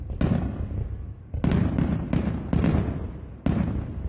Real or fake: real